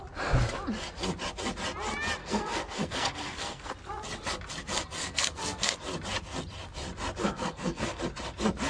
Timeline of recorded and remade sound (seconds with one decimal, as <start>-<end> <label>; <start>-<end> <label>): 0.0-2.2 recorded; 2.2-3.7 remade; 3.7-5.0 recorded; 5.0-5.8 remade; 5.8-7.2 recorded; 7.2-8.0 remade; 8.0-8.7 recorded